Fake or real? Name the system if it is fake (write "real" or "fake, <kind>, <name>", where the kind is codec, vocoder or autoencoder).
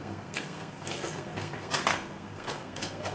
fake, codec, SNAC